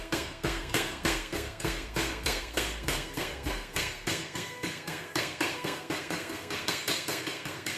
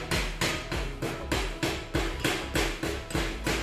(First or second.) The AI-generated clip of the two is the first